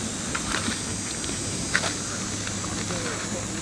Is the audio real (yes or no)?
yes